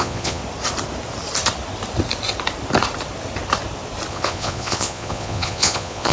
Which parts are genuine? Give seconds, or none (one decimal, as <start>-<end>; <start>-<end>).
0.4-4.1